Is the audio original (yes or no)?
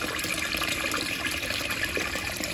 yes